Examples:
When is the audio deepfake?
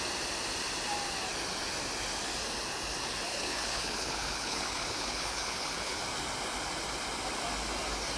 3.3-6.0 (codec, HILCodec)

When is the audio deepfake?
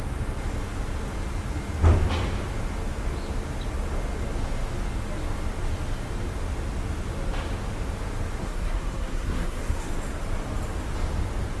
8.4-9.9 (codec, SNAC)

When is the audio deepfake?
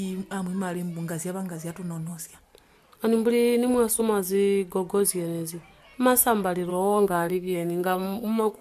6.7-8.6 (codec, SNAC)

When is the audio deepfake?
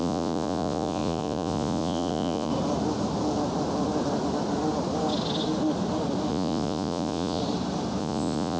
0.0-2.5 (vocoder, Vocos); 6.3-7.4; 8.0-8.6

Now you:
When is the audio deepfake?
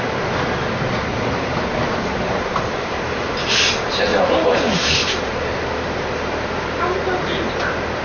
1.1-3.3 (vocoder, BigVGAN v2); 4.1-6.8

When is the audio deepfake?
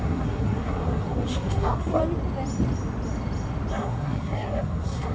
0.0-2.0 (codec, SNAC); 3.7-5.1